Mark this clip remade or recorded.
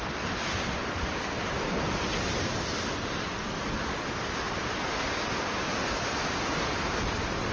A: recorded